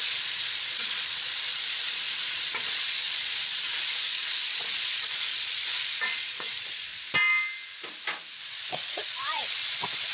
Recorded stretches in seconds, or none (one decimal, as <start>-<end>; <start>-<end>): 6.9-8.4